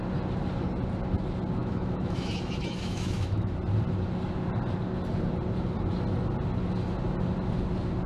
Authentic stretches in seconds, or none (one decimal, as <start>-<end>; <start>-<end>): 0.0-1.6; 3.5-8.1